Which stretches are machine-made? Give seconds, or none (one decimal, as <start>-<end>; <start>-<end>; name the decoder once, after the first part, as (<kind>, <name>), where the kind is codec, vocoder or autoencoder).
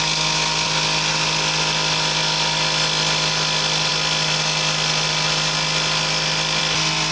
none